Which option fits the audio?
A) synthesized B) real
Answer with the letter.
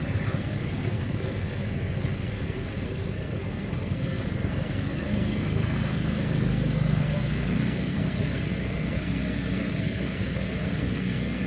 A